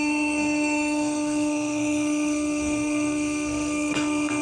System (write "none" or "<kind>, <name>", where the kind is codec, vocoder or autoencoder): codec, SNAC